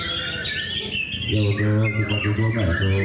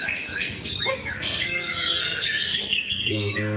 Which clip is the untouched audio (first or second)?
first